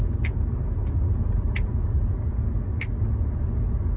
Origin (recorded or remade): recorded